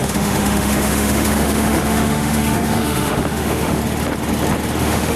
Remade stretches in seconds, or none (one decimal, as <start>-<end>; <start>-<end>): 0.0-3.8; 4.8-5.2